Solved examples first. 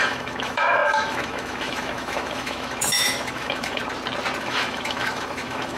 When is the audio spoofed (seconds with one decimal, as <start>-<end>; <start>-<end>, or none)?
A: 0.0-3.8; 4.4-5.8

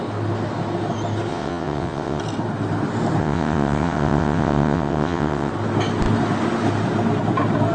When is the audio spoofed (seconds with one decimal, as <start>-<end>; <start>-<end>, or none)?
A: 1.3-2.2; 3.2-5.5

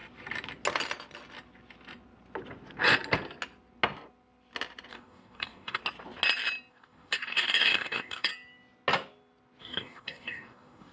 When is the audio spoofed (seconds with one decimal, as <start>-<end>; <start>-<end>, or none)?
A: 4.9-5.8; 6.7-8.3; 9.6-10.9

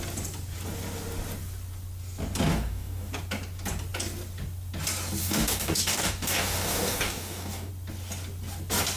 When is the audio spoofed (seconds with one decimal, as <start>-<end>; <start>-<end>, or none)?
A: 2.5-3.1; 5.2-7.7

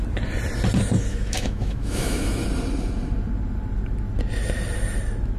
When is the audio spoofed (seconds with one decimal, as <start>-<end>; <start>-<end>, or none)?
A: 1.1-2.4

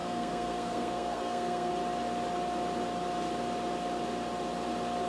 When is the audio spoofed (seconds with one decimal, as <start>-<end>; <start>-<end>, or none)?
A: 0.0-1.7

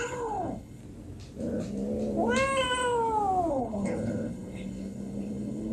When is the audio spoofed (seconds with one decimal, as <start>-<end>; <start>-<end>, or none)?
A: 0.0-0.8; 3.5-5.7

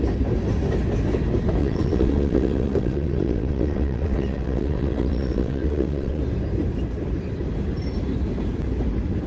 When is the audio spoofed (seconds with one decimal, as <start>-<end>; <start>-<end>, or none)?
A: 1.6-6.2